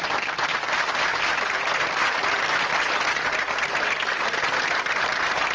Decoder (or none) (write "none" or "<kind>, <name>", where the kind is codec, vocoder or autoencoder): none